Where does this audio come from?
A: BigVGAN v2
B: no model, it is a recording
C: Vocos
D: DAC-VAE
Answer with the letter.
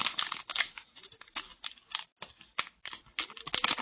B